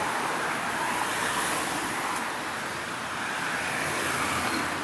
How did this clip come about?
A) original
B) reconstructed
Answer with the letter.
A